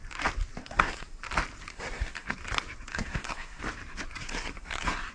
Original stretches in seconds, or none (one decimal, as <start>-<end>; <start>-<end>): 0.0-0.6; 1.2-1.7; 2.3-2.9; 3.6-4.2